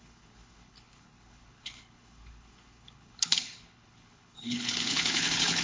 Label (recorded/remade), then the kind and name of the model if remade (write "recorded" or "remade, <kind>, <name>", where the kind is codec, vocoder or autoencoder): remade, codec, HILCodec